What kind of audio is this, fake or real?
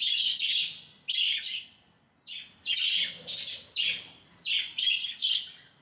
real